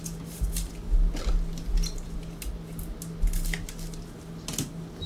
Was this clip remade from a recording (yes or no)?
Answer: no